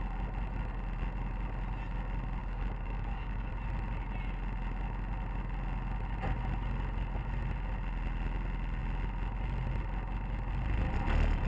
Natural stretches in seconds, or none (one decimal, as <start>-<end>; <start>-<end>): 0.0-2.4; 3.5-11.5